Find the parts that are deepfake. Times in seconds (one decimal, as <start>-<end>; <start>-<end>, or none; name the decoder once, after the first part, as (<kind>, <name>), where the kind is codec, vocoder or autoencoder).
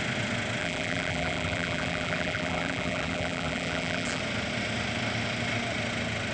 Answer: 0.6-4.2 (vocoder, BigVGAN v2)